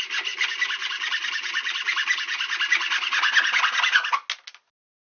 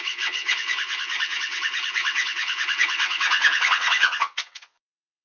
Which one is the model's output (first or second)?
second